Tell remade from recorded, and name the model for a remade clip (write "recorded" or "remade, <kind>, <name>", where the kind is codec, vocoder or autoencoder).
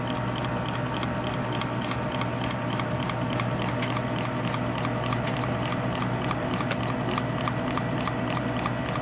recorded